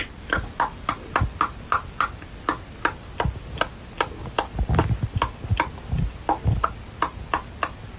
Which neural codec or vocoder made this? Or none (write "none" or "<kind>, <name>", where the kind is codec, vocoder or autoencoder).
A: none